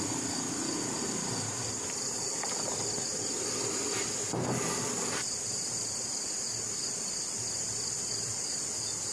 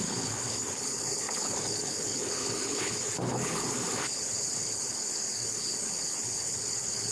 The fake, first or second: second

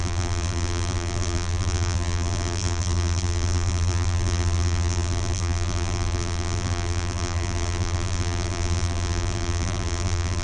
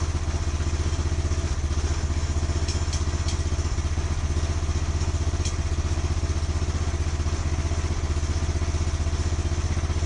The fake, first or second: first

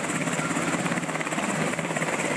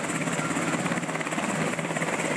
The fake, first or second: first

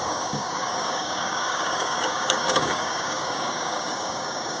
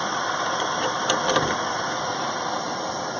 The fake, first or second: first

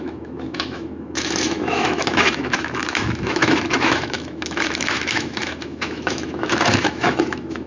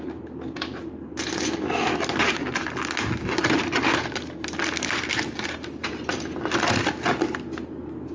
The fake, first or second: first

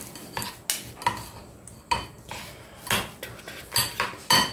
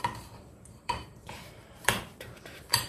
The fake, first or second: second